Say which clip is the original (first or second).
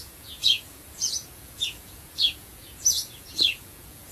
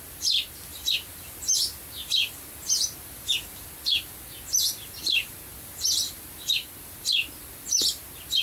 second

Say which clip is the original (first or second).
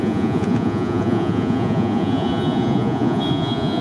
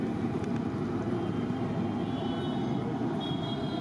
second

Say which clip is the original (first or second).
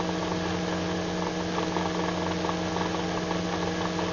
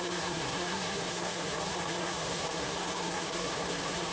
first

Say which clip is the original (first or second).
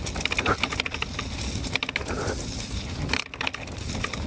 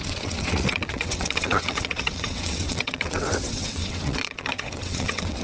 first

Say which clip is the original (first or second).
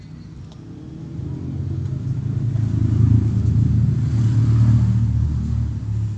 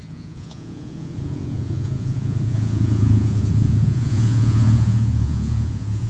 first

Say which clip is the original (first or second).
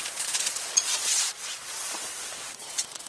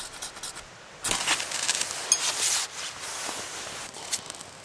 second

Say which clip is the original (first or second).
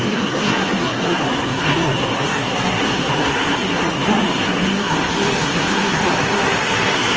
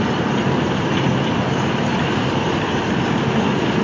second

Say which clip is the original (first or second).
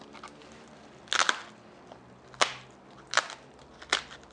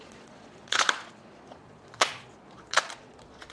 first